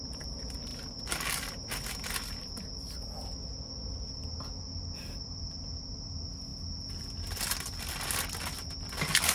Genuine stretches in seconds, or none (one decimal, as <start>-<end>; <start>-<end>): 0.0-9.3